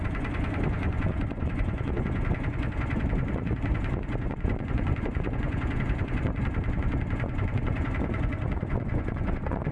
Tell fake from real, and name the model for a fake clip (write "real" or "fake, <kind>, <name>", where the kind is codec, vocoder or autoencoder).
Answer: fake, vocoder, Vocos